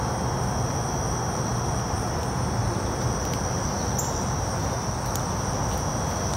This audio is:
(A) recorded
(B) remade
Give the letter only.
A